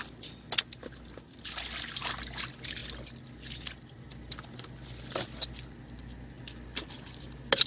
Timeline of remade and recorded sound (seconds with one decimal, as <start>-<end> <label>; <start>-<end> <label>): 0.0-7.7 recorded